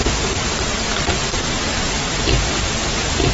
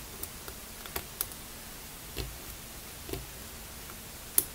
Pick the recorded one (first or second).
second